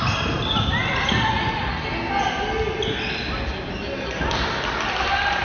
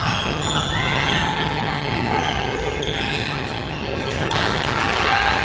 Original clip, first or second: first